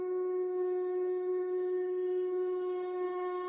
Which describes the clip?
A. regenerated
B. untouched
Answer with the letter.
A